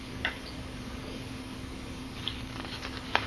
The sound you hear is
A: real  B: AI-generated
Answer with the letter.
B